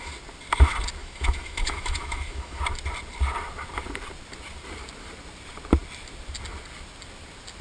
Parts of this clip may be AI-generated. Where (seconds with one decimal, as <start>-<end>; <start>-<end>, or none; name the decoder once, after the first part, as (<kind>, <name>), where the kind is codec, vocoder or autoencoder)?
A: 1.0-2.6 (autoencoder, DAC-VAE)